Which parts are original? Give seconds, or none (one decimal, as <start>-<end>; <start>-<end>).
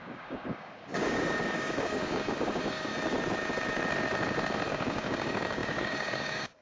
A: 2.9-4.7